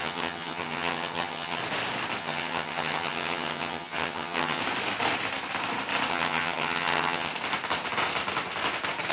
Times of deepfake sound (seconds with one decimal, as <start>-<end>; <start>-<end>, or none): 0.0-1.6; 2.2-4.6; 6.1-7.3